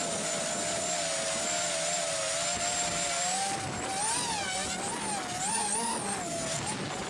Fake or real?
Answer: real